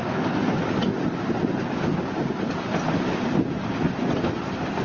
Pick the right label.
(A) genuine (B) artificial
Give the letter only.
A